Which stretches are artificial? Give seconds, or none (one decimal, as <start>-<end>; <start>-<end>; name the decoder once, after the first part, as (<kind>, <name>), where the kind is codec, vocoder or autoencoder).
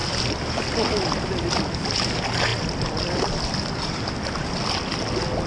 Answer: 0.0-0.7 (vocoder, BigVGAN v2); 2.5-4.5